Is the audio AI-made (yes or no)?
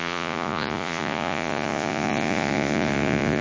yes